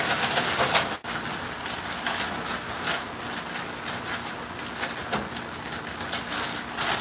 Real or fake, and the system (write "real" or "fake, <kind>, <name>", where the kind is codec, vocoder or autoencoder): real